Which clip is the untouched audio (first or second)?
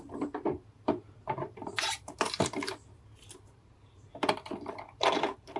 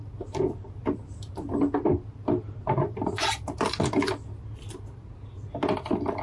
second